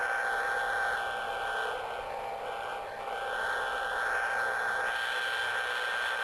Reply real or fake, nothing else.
real